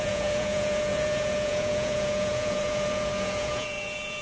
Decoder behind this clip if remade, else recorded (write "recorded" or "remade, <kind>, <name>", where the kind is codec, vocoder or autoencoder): remade, vocoder, Vocos